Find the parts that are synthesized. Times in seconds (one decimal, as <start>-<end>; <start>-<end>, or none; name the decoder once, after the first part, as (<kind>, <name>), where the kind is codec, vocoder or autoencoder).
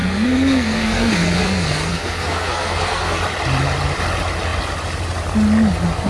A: 0.0-3.2 (codec, SNAC)